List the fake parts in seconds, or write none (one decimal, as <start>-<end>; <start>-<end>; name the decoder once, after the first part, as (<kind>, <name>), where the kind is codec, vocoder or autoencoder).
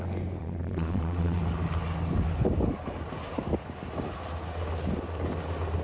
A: 0.4-1.4 (vocoder, Vocos)